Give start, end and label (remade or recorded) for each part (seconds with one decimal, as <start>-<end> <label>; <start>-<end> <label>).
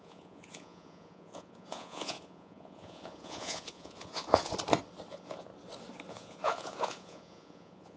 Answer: 0.0-4.5 remade; 4.5-5.1 recorded; 5.1-5.5 remade; 5.5-6.1 recorded; 6.1-8.0 remade